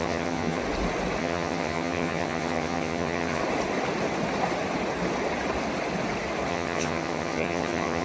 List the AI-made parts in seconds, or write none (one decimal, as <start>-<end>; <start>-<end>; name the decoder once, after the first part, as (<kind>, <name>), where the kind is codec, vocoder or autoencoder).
0.0-0.6 (vocoder, HiFi-GAN); 1.2-3.4; 6.5-8.0